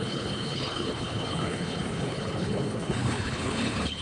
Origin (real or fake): fake